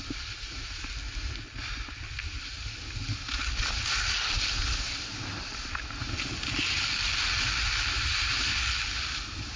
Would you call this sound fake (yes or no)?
no